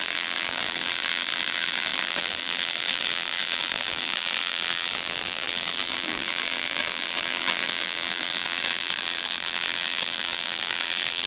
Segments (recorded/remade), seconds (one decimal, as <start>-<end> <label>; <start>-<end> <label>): 0.0-11.3 remade